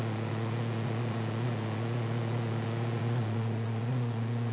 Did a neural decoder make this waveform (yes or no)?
yes